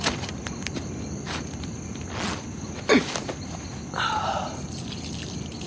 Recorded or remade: recorded